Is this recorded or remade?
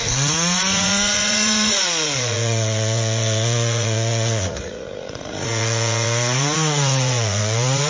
remade